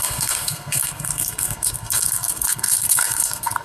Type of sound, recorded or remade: remade